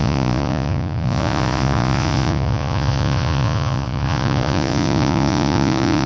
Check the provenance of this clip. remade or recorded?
remade